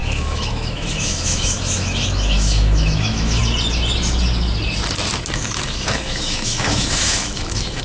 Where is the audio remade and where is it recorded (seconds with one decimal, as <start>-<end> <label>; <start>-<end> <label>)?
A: 0.0-3.4 remade; 3.4-5.3 recorded; 5.3-7.8 remade